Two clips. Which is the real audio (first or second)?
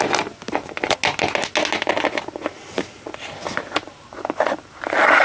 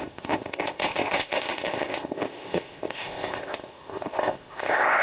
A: first